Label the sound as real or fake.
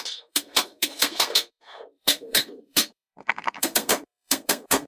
fake